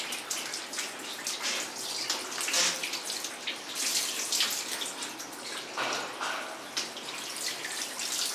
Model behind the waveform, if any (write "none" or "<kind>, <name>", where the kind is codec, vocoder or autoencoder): none